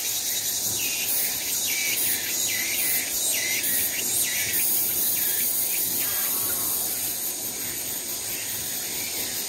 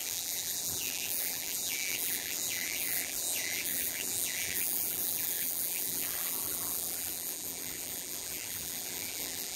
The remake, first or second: second